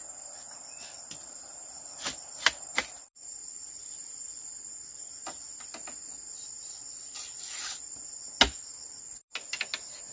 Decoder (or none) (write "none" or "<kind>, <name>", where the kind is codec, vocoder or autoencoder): none